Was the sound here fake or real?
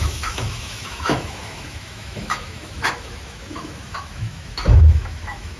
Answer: fake